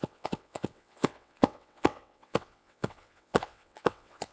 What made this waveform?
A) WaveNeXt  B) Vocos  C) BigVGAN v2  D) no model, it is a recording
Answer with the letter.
A